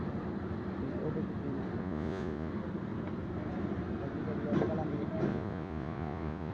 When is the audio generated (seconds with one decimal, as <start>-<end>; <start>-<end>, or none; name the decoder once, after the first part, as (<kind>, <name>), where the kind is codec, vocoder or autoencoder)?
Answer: 1.8-2.5 (vocoder, Vocos); 5.3-6.5